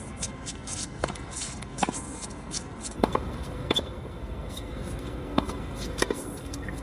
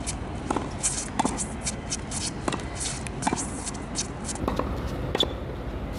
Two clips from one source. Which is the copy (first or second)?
first